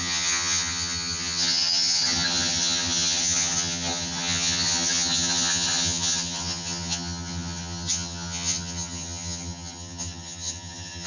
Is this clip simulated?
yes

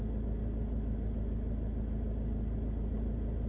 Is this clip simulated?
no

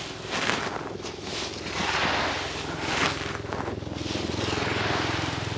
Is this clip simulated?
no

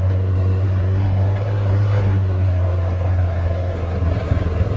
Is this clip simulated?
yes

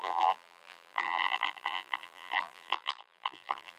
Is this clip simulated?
yes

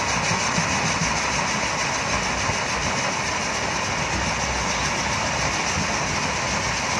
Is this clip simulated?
no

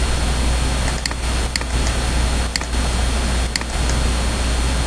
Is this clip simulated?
no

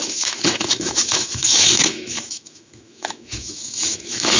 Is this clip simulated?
yes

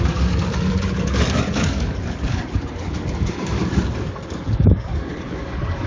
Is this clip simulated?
yes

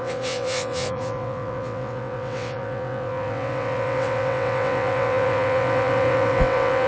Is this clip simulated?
yes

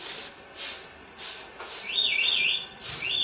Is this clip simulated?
no